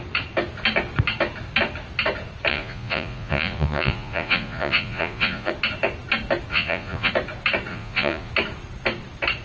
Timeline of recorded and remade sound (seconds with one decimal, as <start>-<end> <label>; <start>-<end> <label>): 0.0-2.5 recorded; 2.5-5.5 remade; 5.5-6.5 recorded; 6.5-7.1 remade; 7.1-7.7 recorded; 7.7-8.3 remade; 8.3-9.4 recorded